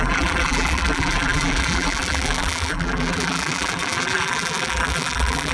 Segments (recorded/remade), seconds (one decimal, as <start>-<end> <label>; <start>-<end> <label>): 0.0-5.5 remade

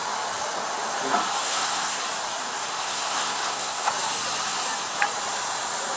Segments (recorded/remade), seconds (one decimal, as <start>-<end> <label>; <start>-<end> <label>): 0.0-1.4 recorded; 1.4-2.0 remade; 2.0-2.8 recorded; 2.8-3.9 remade; 3.9-6.0 recorded